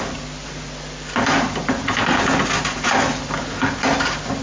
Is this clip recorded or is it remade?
recorded